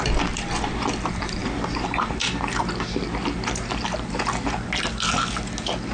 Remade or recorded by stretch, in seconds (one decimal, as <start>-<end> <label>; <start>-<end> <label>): 0.0-5.9 recorded